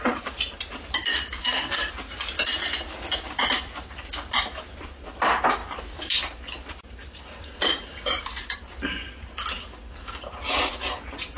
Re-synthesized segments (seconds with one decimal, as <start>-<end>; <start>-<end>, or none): 1.4-1.9